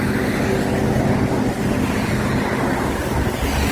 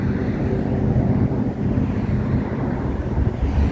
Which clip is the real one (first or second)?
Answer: first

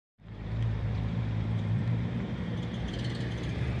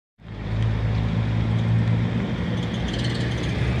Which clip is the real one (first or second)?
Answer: second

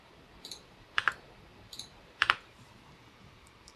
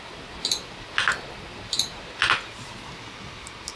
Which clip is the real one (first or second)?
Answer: second